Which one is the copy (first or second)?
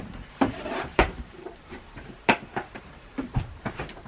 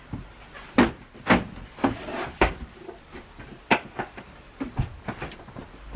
first